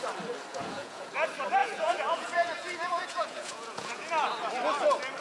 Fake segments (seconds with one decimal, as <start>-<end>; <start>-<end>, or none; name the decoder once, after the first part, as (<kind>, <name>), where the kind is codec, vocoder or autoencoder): 0.5-1.1 (vocoder, Vocos); 1.6-4.1